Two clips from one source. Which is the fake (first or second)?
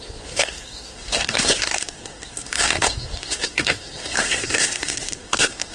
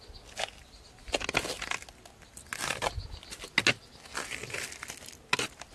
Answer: first